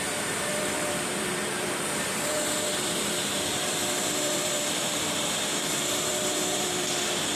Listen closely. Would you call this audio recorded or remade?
remade